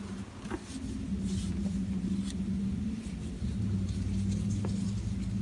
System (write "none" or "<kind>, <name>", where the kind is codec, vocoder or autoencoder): none